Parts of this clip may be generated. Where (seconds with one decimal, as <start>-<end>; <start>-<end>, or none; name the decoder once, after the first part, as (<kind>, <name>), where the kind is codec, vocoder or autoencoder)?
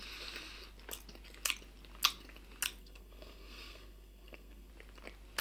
2.8-4.7 (codec, SNAC)